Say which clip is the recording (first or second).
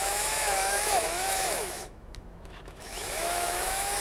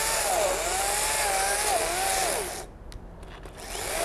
second